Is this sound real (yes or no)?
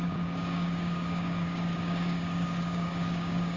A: no